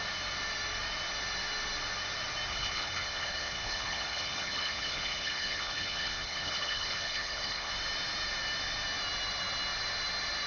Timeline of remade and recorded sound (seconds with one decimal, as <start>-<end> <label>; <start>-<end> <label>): 0.0-2.5 recorded; 2.5-7.7 remade; 7.7-10.5 recorded